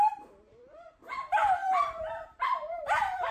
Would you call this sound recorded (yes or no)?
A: no